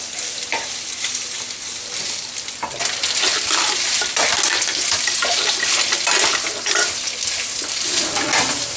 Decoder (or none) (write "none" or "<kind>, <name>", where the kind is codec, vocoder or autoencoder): none